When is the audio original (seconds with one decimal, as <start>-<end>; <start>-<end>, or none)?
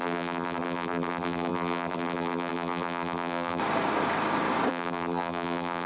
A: 3.6-4.7